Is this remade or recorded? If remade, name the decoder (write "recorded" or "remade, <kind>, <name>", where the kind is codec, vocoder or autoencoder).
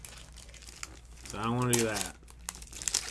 recorded